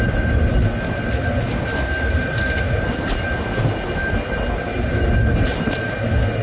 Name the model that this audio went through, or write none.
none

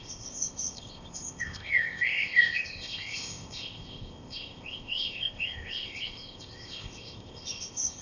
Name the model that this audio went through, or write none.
codec, ZipCodec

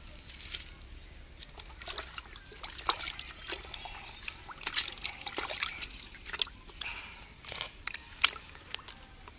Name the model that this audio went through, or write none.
none